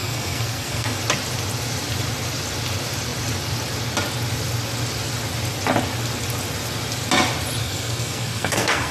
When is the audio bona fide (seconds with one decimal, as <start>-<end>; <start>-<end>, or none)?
1.0-7.6